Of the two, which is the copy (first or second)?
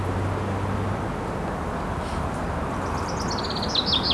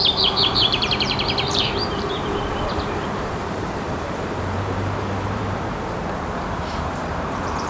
second